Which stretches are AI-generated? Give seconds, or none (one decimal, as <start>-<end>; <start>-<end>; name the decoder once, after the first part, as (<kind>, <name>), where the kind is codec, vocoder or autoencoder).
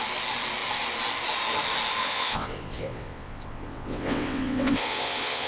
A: 2.0-5.5 (vocoder, WaveNeXt)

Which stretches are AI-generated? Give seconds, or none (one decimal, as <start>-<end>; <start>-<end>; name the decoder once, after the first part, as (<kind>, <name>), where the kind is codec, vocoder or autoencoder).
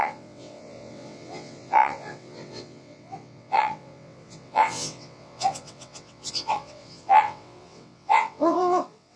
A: 0.0-9.2 (vocoder, WaveNeXt)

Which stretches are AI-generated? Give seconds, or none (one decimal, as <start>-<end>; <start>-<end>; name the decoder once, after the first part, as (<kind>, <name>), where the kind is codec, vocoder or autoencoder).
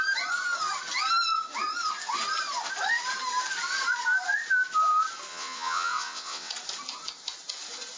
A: 5.3-6.5 (vocoder, WaveNeXt)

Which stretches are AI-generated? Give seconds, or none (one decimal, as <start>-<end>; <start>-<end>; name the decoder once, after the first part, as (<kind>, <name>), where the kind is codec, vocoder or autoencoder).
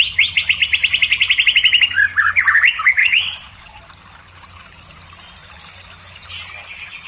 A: 3.0-3.8 (vocoder, WaveNeXt)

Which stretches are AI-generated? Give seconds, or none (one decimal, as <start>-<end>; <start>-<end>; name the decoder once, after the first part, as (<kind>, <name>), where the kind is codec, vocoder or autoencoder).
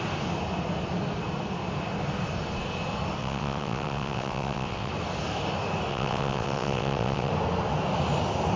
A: 3.2-4.9 (vocoder, WaveNeXt); 5.9-7.3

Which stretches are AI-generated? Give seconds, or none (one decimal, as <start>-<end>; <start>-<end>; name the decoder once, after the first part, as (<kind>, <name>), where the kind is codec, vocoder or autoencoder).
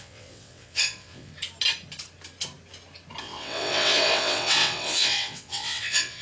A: 0.0-1.3 (vocoder, WaveNeXt); 3.2-6.2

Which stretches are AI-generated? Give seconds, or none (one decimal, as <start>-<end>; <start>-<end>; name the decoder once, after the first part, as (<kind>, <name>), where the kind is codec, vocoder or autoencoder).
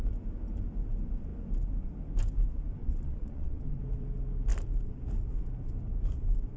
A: 2.8-3.8 (vocoder, WaveNeXt)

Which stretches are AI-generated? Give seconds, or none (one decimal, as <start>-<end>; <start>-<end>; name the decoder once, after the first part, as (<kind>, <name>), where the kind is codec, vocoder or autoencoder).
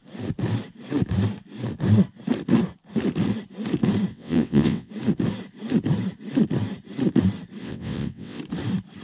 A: 4.1-4.9 (vocoder, WaveNeXt); 7.6-8.4